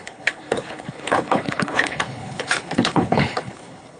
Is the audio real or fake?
fake